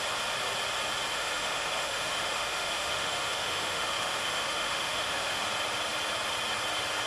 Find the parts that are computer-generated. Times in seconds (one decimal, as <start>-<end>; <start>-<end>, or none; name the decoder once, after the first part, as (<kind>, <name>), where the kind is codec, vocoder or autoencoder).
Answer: 1.1-5.4 (autoencoder, DAC-VAE)